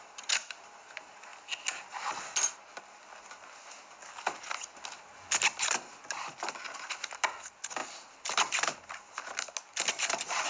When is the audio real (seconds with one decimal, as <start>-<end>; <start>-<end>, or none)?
0.0-10.5